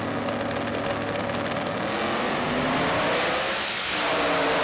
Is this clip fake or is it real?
real